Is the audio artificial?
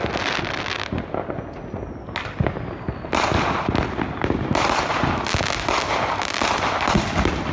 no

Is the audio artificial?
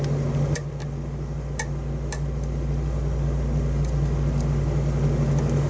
no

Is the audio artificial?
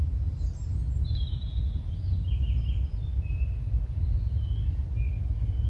no